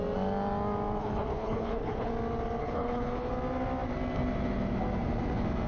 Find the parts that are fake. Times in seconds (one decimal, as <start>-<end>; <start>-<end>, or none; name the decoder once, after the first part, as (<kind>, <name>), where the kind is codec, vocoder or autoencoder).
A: 1.0-2.1 (codec, HILCodec); 2.6-3.3